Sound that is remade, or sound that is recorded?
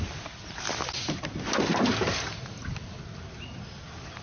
recorded